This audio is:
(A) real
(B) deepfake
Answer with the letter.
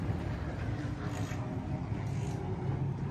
A